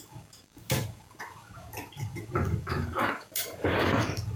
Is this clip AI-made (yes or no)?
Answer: yes